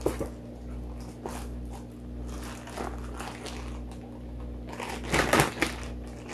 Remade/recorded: recorded